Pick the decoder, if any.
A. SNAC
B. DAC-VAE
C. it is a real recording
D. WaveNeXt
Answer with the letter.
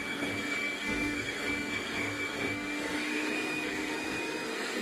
A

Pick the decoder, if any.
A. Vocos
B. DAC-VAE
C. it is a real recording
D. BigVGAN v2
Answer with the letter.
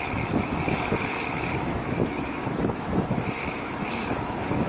B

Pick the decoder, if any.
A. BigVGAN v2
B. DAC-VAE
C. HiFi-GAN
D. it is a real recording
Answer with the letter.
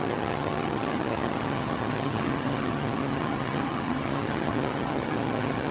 C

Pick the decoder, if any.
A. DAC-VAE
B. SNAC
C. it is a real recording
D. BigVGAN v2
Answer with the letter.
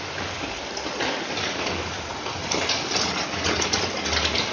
C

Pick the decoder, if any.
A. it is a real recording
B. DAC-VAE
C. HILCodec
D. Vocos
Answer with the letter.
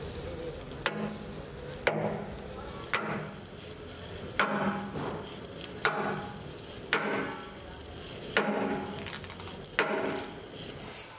A